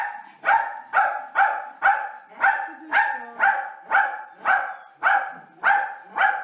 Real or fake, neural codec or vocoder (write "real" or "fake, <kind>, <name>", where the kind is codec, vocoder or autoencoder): real